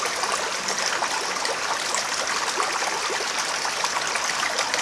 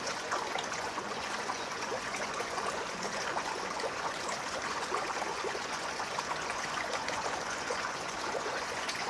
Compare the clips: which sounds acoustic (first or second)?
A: first